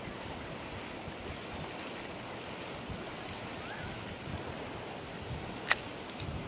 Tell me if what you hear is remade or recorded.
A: recorded